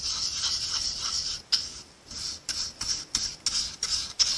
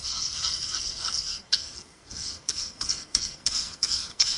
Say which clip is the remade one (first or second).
second